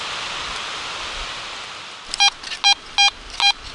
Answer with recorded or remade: recorded